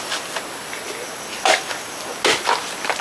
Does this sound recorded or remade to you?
recorded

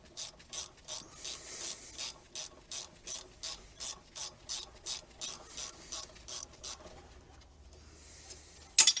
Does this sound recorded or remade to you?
recorded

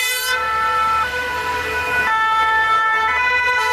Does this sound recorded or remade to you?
remade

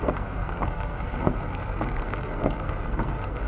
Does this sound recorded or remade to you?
remade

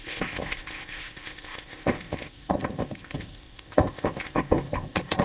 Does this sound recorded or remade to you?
remade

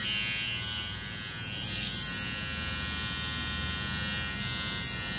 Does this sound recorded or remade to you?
recorded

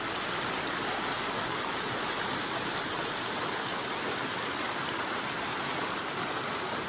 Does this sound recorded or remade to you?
recorded